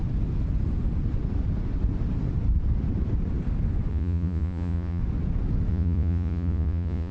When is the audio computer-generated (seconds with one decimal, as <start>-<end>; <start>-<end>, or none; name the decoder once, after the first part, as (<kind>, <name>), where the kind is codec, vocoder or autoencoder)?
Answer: 3.9-5.0 (vocoder, Vocos); 5.7-7.1